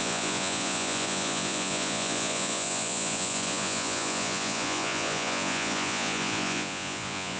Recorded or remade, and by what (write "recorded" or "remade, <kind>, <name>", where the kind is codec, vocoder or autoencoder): remade, vocoder, Vocos